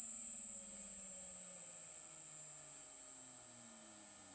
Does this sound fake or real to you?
real